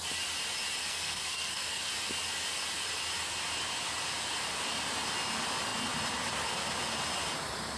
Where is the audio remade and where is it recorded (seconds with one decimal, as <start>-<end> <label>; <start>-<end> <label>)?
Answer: 0.0-0.8 recorded; 0.8-1.9 remade; 1.9-7.8 recorded